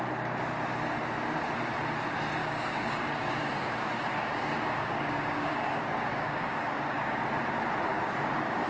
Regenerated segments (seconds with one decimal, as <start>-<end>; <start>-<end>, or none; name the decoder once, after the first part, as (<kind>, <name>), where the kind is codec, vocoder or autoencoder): 2.4-7.2 (codec, DAC); 7.9-8.7